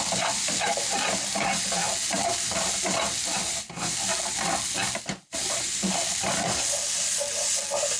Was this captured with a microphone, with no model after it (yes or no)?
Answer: yes